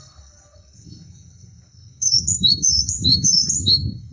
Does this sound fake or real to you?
fake